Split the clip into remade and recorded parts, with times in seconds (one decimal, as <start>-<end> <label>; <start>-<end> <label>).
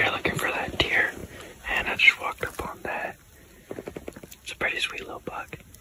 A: 0.0-5.8 recorded